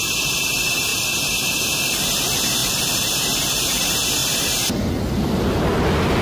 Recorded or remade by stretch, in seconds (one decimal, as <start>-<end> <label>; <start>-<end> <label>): 0.0-0.9 recorded; 0.9-2.0 remade; 2.0-2.6 recorded; 2.6-3.1 remade; 3.1-4.2 recorded; 4.2-4.9 remade; 4.9-6.2 recorded